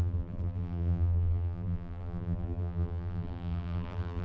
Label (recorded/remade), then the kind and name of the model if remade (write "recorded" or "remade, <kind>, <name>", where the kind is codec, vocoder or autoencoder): remade, vocoder, BigVGAN v2